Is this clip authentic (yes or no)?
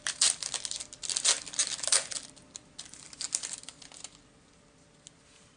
yes